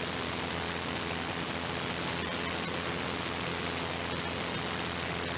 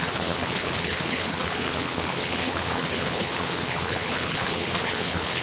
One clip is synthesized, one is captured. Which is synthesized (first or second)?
second